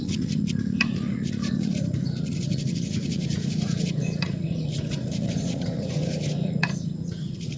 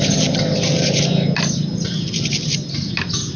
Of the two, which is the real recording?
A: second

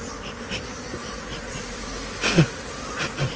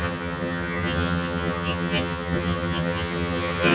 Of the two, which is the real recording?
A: first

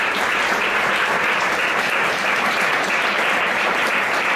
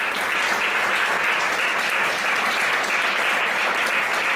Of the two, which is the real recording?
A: second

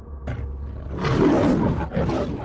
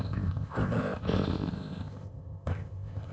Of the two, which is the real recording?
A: first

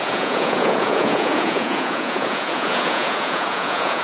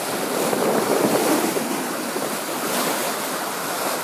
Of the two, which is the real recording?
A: second